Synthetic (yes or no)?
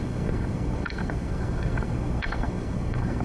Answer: yes